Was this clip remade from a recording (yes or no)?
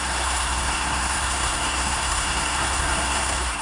yes